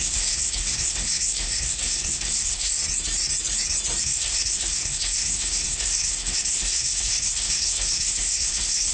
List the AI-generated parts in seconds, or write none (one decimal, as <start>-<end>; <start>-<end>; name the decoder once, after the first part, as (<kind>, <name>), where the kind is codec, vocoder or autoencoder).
0.0-2.8 (codec, SNAC); 4.0-8.9